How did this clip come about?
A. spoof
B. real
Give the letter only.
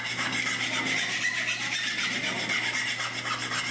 B